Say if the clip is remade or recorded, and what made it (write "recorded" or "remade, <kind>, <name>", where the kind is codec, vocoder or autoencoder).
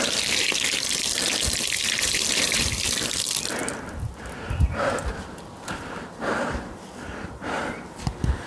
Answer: remade, vocoder, BigVGAN v2